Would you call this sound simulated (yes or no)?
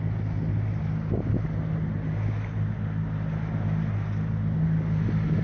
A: no